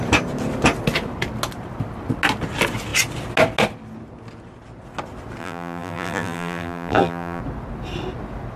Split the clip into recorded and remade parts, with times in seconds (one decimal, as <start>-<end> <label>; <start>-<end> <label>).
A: 0.0-5.4 recorded; 5.4-7.4 remade; 7.4-8.6 recorded